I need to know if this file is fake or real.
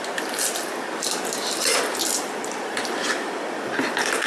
real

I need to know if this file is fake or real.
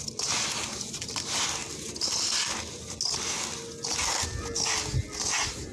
real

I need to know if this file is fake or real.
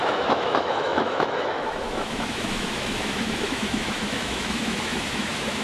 fake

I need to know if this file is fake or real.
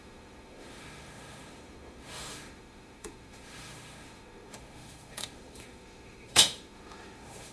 fake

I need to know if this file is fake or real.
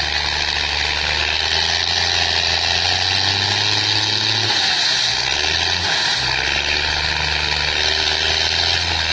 real